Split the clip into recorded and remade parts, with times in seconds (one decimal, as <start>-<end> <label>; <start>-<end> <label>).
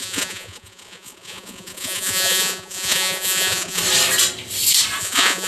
0.0-3.8 remade; 3.8-5.0 recorded; 5.0-5.5 remade